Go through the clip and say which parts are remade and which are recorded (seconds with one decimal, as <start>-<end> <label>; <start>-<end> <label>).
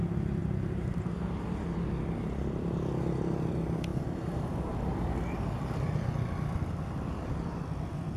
0.0-0.4 recorded; 0.4-1.1 remade; 1.1-3.9 recorded; 3.9-5.6 remade; 5.6-8.2 recorded